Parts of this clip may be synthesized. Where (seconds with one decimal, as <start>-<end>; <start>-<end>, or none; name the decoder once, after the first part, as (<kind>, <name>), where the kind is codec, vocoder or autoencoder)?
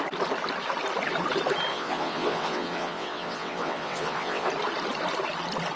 1.7-4.5 (vocoder, WaveNeXt)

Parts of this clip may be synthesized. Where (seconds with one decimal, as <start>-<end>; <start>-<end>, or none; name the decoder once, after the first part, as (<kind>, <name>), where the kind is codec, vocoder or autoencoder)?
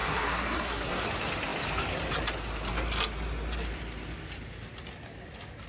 0.0-1.0 (codec, SNAC)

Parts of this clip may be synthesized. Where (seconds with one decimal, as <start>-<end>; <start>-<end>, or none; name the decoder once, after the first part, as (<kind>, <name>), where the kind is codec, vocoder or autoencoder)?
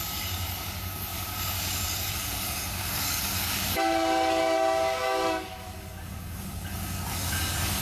0.0-7.8 (codec, DAC)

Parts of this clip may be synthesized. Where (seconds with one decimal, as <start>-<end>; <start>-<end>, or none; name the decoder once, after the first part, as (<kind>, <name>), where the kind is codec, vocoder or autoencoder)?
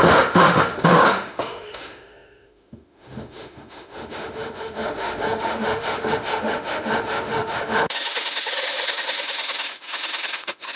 0.0-10.8 (autoencoder, DAC-VAE)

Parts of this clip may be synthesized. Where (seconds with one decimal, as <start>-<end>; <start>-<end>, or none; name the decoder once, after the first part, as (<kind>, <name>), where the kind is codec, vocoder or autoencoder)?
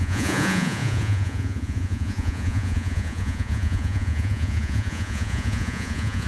0.0-6.3 (vocoder, Vocos)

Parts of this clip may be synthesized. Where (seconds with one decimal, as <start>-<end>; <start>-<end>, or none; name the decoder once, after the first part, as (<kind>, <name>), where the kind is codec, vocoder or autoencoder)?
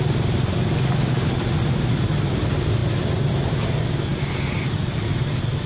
none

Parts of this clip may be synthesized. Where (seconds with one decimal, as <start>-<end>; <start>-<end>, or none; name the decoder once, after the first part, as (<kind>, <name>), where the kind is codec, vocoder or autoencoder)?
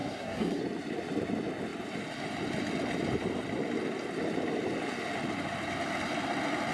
0.0-0.6 (codec, SNAC)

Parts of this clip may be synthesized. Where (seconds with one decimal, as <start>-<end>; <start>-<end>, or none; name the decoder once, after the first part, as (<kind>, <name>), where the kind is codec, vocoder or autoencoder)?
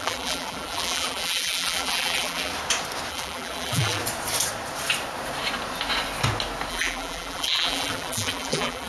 0.0-2.5 (vocoder, BigVGAN v2); 3.1-4.0; 6.7-8.9